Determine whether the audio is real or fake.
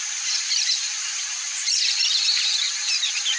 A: fake